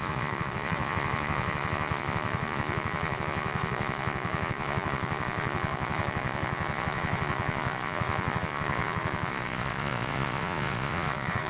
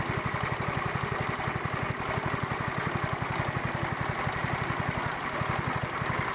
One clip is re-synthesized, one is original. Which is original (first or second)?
second